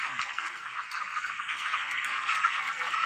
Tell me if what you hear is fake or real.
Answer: fake